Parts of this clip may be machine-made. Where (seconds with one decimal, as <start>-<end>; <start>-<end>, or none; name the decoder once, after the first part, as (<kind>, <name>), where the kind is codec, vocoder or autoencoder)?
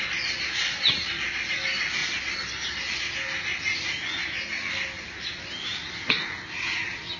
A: none